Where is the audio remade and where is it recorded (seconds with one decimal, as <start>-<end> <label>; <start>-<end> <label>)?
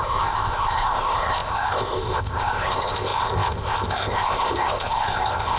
0.0-5.6 remade